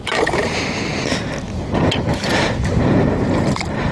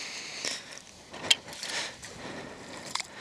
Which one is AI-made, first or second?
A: second